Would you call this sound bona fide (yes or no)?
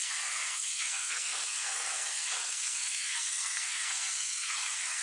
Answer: no